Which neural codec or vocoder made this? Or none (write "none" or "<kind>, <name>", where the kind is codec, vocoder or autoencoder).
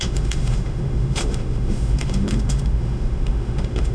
autoencoder, DAC-VAE